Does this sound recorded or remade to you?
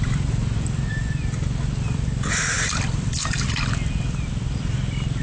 recorded